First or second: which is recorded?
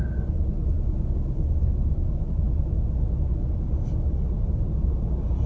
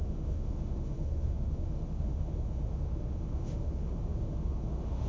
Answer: first